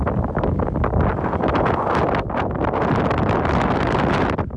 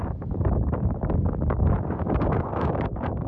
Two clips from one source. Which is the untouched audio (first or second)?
first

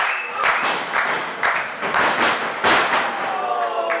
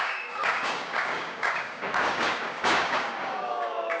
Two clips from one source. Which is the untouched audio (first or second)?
first